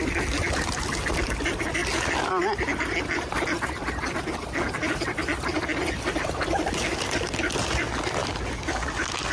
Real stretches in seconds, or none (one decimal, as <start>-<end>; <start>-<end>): 0.0-9.3